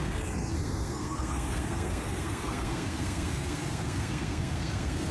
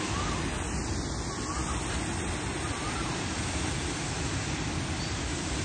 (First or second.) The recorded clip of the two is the second